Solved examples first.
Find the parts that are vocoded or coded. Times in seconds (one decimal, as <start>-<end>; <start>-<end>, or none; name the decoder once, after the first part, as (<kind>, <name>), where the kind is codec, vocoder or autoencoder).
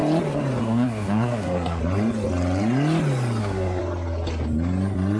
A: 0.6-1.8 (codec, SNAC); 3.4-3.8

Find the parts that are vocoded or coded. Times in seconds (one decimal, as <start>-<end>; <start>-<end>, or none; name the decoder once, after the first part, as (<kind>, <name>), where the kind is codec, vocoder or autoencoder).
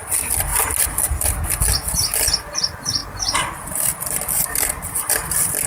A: none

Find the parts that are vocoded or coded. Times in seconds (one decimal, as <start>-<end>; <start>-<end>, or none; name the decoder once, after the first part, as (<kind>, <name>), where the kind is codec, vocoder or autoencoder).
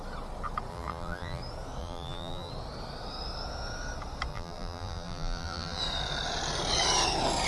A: 0.7-1.4 (vocoder, BigVGAN v2); 1.8-2.5; 4.3-5.8